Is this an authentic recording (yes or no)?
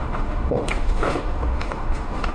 no